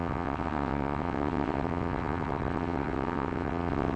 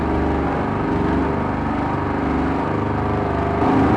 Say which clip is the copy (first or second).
first